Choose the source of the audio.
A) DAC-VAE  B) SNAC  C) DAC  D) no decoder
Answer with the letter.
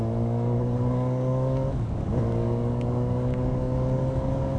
C